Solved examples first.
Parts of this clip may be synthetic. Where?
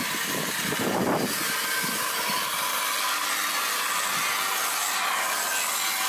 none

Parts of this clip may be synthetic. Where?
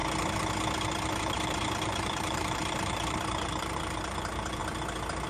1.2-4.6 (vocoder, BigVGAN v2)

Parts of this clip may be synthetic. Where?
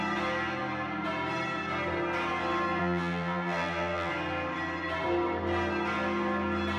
2.8-4.1 (vocoder, BigVGAN v2)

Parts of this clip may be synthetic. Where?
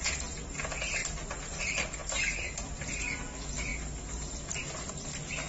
none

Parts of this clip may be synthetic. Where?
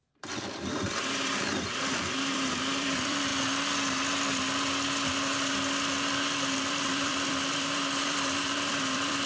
0.0-3.3 (vocoder, BigVGAN v2); 6.4-9.3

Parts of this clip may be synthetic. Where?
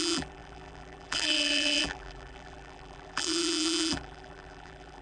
0.0-5.0 (vocoder, BigVGAN v2)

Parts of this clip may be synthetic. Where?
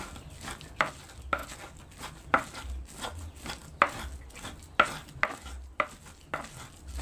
1.4-2.7 (vocoder, BigVGAN v2)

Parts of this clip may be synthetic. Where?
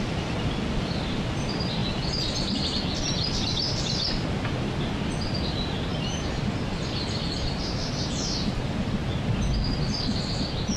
1.8-2.8 (vocoder, BigVGAN v2); 5.9-7.1